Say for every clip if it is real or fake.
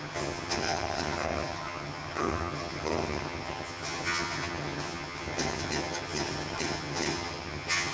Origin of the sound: fake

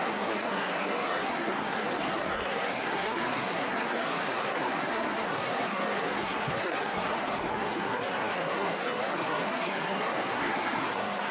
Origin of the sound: fake